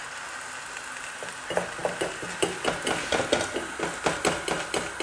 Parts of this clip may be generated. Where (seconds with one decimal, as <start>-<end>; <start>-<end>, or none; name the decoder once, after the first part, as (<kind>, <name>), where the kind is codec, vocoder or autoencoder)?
none